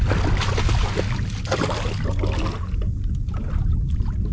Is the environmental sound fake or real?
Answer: real